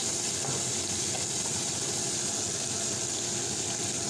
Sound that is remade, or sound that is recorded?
recorded